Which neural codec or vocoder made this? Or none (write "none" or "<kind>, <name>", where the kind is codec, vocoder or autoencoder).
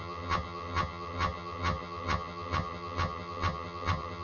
vocoder, HiFi-GAN